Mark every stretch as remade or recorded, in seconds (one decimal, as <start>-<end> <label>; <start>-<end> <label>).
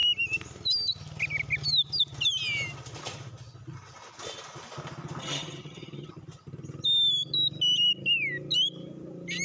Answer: 0.0-5.2 recorded; 5.2-6.1 remade; 6.1-9.4 recorded